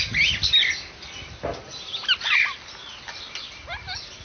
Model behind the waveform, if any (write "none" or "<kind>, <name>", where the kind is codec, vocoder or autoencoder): none